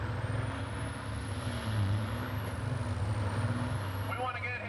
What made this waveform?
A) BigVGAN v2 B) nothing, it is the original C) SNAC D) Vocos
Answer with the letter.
B